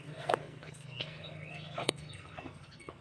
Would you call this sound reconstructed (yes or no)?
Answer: yes